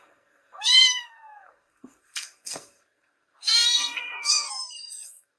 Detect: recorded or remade remade